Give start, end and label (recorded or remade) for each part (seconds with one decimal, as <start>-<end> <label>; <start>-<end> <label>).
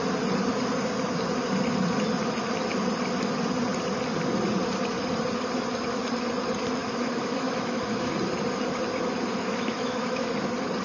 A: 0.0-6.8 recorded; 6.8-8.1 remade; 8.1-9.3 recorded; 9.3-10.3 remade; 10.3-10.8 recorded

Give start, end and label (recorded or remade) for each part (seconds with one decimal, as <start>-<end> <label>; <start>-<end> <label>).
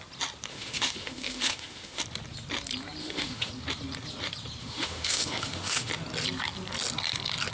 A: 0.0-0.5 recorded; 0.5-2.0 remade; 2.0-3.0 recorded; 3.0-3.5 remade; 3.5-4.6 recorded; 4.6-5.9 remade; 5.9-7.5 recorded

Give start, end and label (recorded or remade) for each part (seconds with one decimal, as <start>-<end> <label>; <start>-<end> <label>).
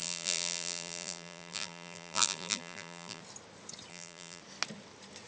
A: 0.0-3.2 remade; 3.2-3.9 recorded; 3.9-4.4 remade; 4.4-5.3 recorded